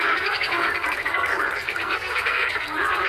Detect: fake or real fake